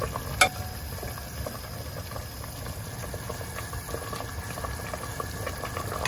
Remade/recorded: recorded